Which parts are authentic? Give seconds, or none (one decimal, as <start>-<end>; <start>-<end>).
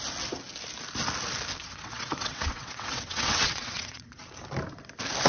0.0-1.6; 4.2-5.3